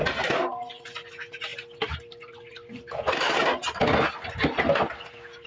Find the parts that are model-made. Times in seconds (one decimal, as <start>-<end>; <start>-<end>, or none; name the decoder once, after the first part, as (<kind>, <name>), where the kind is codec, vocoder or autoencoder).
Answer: none